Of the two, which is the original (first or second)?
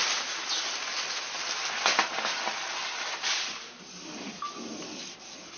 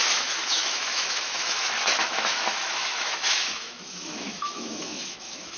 first